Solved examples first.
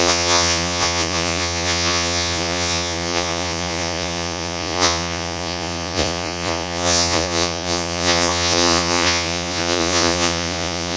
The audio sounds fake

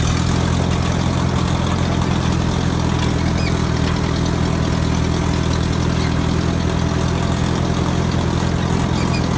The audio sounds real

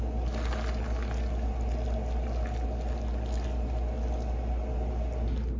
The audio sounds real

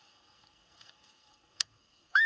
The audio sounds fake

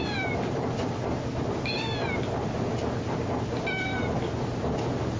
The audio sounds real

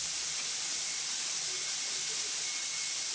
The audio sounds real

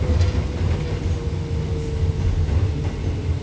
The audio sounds real